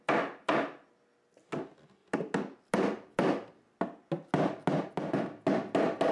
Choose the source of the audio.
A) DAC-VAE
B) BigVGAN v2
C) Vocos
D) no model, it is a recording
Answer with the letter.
D